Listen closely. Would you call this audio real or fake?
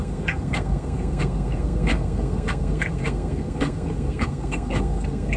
fake